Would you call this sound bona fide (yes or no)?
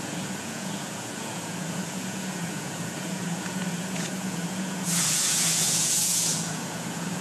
no